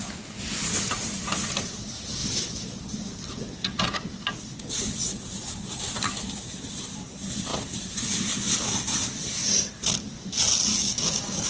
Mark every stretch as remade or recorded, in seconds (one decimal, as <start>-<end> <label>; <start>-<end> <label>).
0.0-10.7 recorded; 10.7-11.5 remade